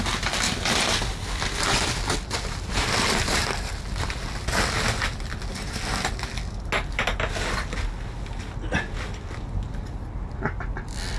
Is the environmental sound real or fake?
real